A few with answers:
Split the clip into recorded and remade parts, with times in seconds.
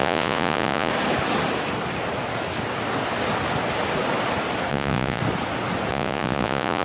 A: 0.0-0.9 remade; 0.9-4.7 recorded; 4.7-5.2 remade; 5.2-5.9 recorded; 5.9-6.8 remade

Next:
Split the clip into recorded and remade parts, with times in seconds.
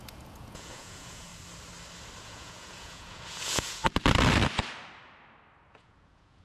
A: 0.0-1.3 remade; 1.3-2.2 recorded; 2.2-3.8 remade; 3.8-5.7 recorded; 5.7-6.4 remade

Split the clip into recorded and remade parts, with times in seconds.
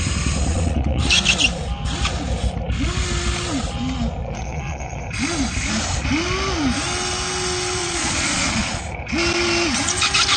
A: 0.0-0.5 recorded; 0.5-1.0 remade; 1.0-4.2 recorded; 4.2-5.0 remade; 5.0-7.8 recorded; 7.8-8.8 remade; 8.8-10.4 recorded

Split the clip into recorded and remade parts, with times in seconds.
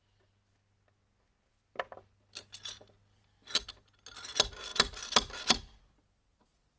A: 0.0-6.8 recorded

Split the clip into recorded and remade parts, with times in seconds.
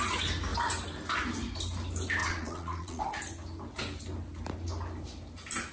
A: 0.0-2.2 recorded; 2.2-3.0 remade; 3.0-5.7 recorded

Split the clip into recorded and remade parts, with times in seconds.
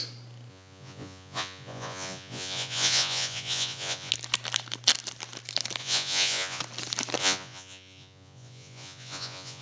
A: 0.0-0.5 recorded; 0.5-4.1 remade; 4.1-5.8 recorded; 5.8-6.6 remade; 6.6-7.2 recorded; 7.2-9.6 remade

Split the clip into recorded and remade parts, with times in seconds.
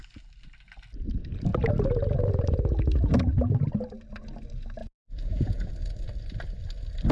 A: 0.0-4.8 recorded; 4.8-5.7 remade; 5.7-7.1 recorded